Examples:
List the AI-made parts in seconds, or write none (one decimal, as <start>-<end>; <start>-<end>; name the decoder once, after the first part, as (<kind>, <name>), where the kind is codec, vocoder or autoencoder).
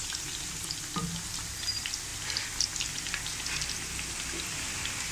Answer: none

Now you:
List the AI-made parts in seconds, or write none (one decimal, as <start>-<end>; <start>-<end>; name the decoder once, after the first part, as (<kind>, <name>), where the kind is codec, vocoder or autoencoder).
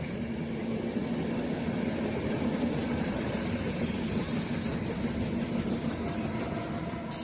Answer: 2.8-3.7 (vocoder, BigVGAN v2)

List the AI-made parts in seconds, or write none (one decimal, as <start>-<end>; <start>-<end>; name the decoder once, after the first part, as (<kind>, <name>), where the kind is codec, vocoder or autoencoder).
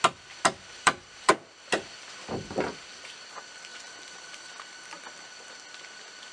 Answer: 0.7-1.3 (vocoder, BigVGAN v2); 3.7-4.6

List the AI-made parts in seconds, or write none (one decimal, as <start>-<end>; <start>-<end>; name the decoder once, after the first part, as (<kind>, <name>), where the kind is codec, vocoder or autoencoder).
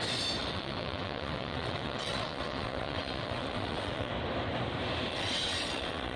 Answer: 0.4-4.1 (vocoder, WaveNeXt); 5.1-6.2